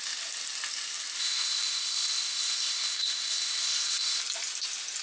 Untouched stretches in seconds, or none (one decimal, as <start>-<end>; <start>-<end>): 0.0-1.2; 4.2-5.0